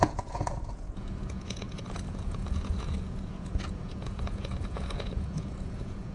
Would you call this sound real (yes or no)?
no